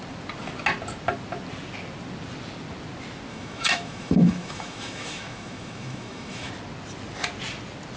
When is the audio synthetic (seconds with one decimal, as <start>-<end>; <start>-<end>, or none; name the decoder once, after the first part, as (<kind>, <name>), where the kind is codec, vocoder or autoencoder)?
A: 3.3-6.5 (autoencoder, DAC-VAE)